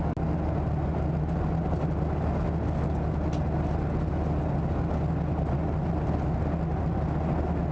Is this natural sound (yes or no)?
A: yes